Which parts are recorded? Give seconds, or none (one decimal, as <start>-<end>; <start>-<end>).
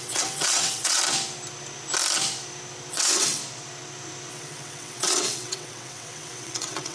1.0-2.9; 3.4-4.3